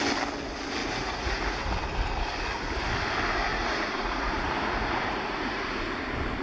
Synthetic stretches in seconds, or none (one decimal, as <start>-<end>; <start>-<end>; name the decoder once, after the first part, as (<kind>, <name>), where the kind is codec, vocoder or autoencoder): 0.8-1.6 (vocoder, Vocos); 3.5-5.8